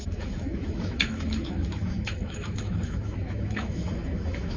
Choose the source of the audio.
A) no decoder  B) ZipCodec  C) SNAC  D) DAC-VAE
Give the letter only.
D